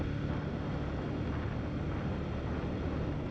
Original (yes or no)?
yes